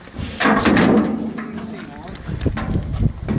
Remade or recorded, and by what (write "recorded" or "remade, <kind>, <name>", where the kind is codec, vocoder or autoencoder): recorded